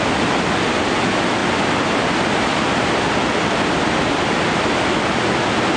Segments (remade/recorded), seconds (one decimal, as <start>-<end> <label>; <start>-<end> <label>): 0.0-1.4 recorded; 1.4-4.9 remade; 4.9-5.8 recorded